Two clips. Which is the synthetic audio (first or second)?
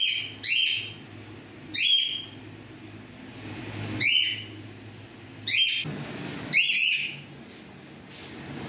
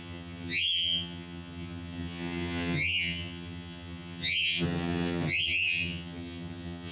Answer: second